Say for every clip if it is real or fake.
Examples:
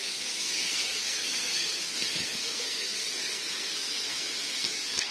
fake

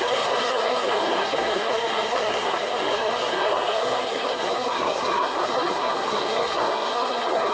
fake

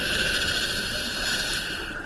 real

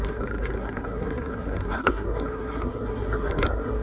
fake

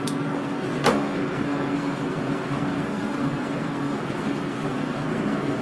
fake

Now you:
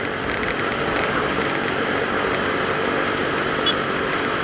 real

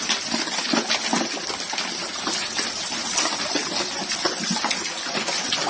real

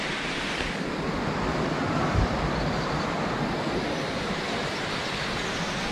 real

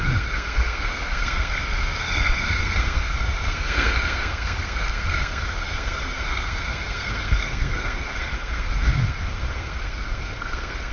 fake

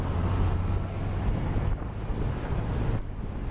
real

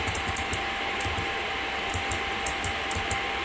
real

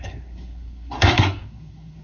fake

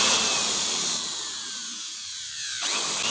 real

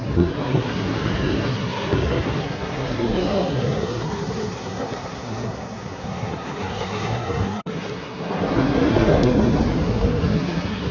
fake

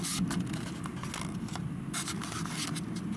real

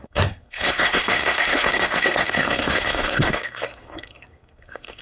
fake